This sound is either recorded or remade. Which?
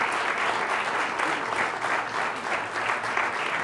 recorded